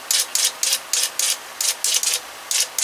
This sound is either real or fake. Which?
real